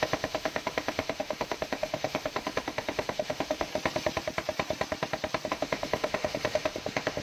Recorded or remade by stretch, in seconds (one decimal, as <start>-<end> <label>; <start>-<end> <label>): 0.0-3.7 remade; 3.7-5.5 recorded; 5.5-7.2 remade